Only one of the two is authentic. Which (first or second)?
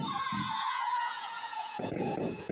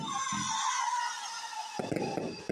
second